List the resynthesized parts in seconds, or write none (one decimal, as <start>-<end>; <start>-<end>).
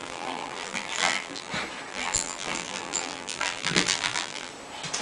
0.0-1.5; 1.9-4.5